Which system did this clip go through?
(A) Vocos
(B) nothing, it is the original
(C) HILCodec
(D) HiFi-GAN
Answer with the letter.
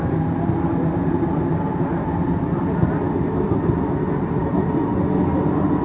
B